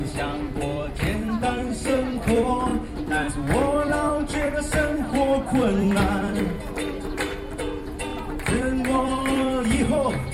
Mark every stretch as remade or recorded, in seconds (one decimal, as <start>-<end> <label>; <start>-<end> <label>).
0.0-10.3 remade